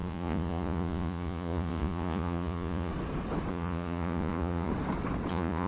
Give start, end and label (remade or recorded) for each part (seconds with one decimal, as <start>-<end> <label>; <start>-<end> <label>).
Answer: 0.0-2.9 remade; 2.9-3.5 recorded; 3.5-4.7 remade; 4.7-5.3 recorded; 5.3-5.7 remade